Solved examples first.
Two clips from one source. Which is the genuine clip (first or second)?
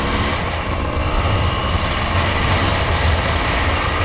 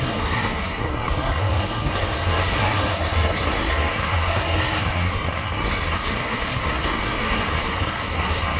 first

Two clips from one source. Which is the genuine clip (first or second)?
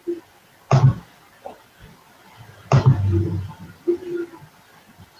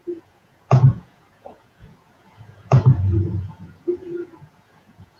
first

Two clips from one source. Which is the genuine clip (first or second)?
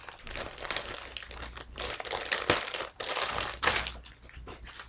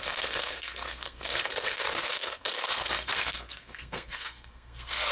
first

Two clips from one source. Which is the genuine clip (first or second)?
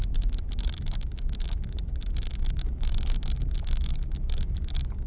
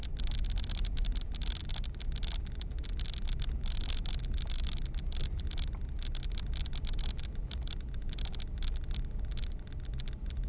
second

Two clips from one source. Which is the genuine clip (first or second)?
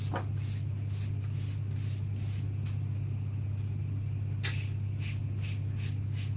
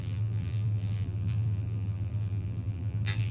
first